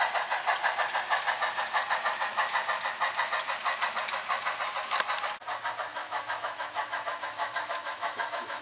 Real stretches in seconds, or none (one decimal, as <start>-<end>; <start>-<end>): 0.0-5.9